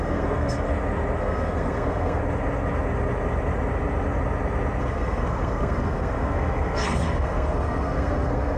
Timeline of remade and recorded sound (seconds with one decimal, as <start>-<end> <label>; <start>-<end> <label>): 0.0-0.7 remade; 0.7-1.2 recorded; 1.2-2.2 remade; 2.2-4.8 recorded; 4.8-8.6 remade